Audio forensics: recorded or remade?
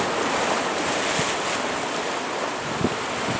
recorded